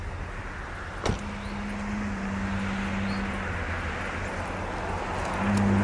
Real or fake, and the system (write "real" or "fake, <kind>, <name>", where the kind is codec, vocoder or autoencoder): real